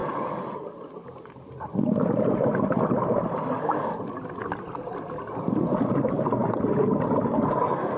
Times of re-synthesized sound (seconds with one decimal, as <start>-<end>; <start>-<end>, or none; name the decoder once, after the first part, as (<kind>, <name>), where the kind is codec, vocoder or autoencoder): none